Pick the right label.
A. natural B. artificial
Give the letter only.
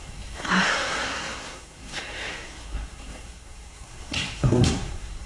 B